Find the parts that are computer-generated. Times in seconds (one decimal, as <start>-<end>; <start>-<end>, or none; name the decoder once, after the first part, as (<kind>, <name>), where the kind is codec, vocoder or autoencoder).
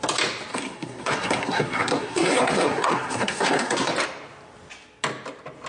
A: 0.5-3.9 (codec, SNAC)